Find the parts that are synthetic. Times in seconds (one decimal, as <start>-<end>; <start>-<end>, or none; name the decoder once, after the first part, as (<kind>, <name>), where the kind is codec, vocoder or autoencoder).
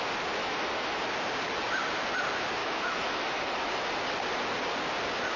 0.4-1.0 (autoencoder, DAC-VAE); 2.6-3.7